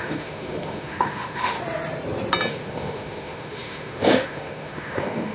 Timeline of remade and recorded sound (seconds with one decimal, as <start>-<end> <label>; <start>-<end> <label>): 0.0-1.6 remade; 1.6-2.5 recorded; 2.5-5.3 remade